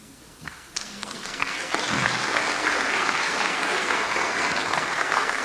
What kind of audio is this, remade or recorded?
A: remade